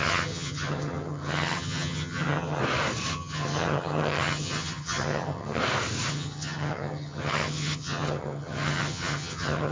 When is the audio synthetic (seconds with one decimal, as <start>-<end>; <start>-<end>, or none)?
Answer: 0.0-2.6; 3.1-5.6; 6.1-9.7